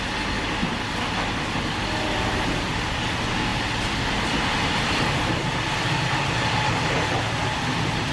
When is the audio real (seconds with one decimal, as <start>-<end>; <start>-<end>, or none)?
0.0-8.1